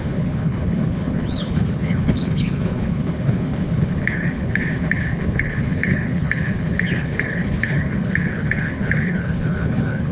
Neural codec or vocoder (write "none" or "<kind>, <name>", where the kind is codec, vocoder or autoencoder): codec, HILCodec